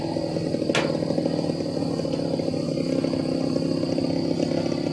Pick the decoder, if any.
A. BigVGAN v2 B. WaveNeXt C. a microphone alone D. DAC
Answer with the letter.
C